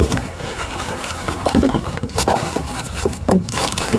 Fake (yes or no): yes